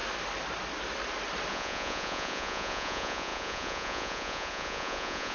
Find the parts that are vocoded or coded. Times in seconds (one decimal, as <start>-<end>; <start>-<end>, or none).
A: 1.5-5.3